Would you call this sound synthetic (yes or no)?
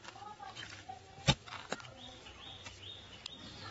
no